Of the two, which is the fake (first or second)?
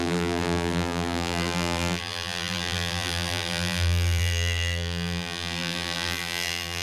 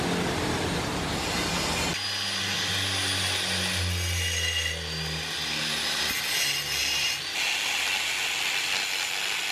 first